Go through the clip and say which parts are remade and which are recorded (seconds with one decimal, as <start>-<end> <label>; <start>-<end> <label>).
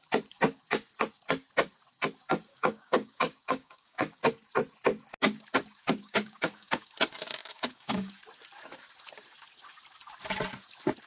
0.0-2.5 recorded; 2.5-4.2 remade; 4.2-6.0 recorded; 6.0-6.9 remade; 6.9-7.4 recorded; 7.4-8.1 remade; 8.1-11.1 recorded